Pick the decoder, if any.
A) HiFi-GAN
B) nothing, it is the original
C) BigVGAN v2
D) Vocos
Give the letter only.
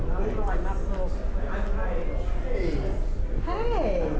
B